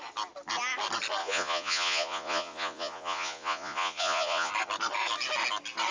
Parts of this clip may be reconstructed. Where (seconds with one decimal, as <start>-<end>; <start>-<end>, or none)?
1.2-4.5